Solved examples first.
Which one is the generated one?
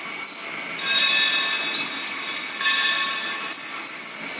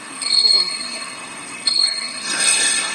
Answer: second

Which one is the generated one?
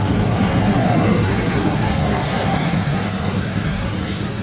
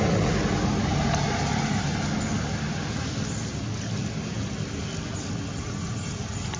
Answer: first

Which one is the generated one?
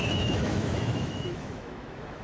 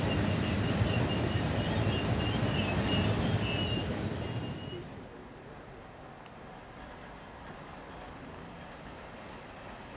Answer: first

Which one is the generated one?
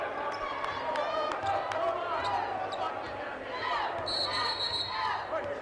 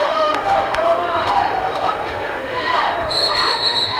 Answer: second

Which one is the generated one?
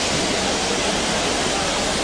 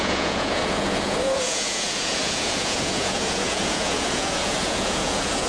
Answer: second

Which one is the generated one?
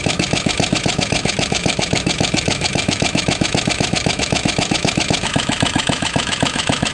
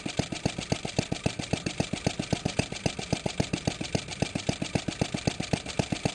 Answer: first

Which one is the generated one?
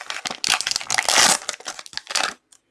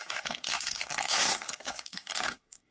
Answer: second